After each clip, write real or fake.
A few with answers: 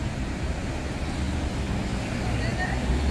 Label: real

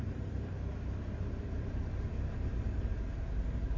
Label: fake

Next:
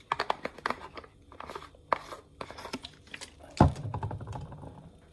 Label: real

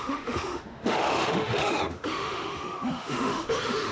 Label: fake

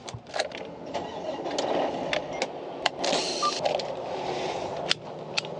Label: real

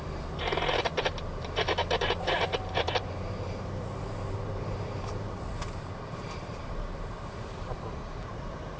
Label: fake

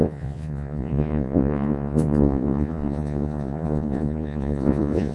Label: fake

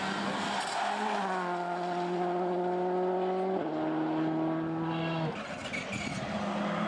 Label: real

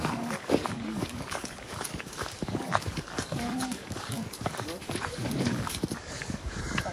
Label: fake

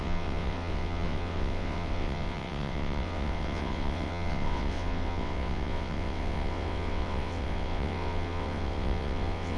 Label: fake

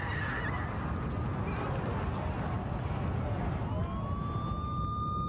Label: real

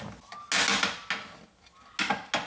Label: real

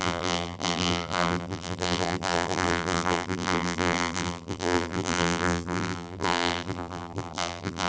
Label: fake